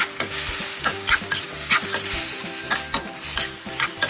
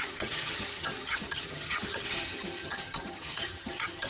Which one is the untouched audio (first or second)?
first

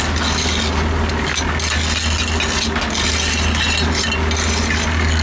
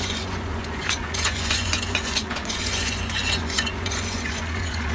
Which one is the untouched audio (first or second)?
first